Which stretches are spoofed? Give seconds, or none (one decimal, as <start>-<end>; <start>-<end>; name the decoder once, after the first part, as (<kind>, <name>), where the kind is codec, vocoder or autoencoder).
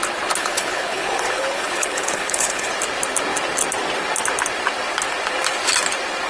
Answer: 0.4-2.7 (codec, HILCodec)